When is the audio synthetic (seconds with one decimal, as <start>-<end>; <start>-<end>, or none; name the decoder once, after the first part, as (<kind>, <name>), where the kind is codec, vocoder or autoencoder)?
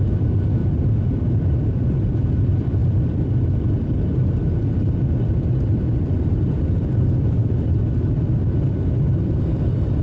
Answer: 0.0-0.6 (vocoder, BigVGAN v2); 1.5-10.0